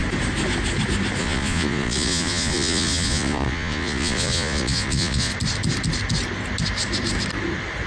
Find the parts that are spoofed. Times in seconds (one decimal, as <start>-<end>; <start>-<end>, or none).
1.2-5.3